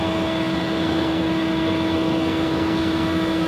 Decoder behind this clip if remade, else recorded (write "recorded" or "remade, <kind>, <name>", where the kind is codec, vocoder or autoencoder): remade, codec, SNAC